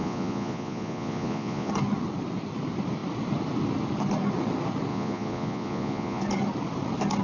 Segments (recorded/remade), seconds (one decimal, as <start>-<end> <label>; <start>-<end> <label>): 0.0-1.7 remade; 1.7-4.9 recorded; 4.9-6.2 remade; 6.2-7.2 recorded